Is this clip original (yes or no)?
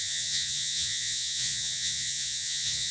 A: no